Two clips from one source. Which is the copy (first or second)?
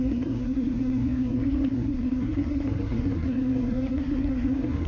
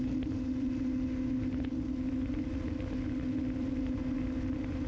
first